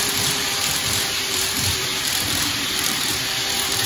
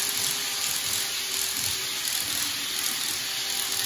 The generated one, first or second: first